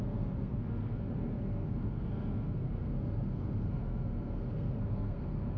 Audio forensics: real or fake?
fake